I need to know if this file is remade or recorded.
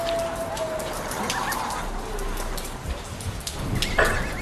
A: recorded